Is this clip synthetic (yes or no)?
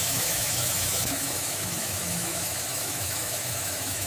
yes